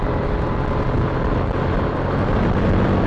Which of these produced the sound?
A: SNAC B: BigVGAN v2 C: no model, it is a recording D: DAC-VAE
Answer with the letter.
C